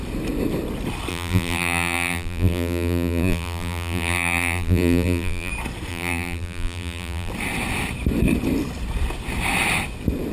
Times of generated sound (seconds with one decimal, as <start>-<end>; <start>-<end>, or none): 1.1-5.5; 5.9-7.3